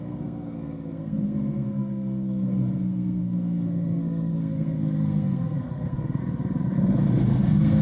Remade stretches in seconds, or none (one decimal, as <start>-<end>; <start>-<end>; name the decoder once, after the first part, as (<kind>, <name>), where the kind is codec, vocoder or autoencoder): 0.0-6.2 (codec, SNAC); 7.1-7.8